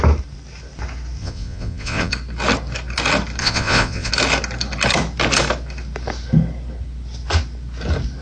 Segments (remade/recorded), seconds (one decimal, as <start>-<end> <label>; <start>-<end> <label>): 0.0-1.2 recorded; 1.2-2.1 remade; 2.1-3.4 recorded; 3.4-4.1 remade; 4.1-8.2 recorded